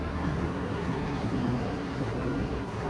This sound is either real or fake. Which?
fake